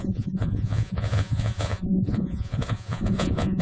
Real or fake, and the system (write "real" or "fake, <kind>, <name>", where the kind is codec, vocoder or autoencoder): fake, vocoder, Vocos